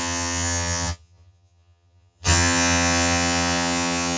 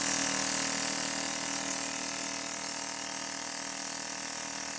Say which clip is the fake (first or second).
first